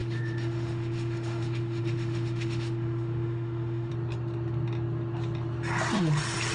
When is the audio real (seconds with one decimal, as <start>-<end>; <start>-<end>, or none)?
3.9-6.5